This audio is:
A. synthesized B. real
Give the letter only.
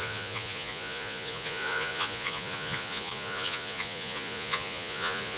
A